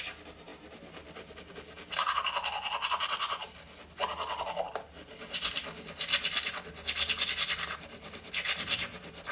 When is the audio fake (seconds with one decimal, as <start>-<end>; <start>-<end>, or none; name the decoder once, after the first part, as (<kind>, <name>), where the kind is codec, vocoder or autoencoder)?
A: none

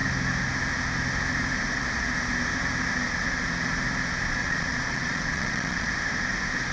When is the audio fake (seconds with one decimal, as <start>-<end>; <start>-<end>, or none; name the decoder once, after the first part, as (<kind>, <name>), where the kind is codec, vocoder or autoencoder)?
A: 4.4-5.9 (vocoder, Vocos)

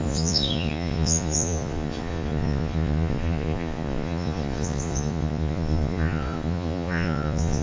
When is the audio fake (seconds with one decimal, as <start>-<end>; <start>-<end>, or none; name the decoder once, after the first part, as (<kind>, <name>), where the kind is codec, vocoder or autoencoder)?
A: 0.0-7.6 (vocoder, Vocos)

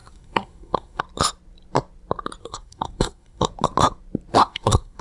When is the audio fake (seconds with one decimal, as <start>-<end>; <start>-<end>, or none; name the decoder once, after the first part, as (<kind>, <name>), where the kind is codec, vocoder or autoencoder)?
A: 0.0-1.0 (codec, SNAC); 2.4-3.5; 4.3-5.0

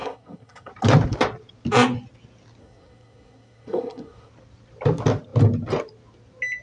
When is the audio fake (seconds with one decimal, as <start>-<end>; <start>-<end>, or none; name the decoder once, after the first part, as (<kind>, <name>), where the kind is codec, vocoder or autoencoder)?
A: 0.0-0.7 (codec, SNAC); 2.6-4.3

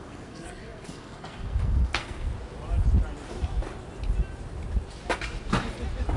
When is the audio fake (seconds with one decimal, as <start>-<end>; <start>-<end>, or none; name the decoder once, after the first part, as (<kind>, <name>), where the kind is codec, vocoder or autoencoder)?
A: 0.0-2.3 (codec, SNAC)

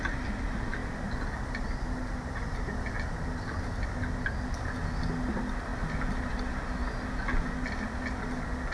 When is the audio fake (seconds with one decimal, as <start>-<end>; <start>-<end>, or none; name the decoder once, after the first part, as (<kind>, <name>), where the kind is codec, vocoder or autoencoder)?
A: none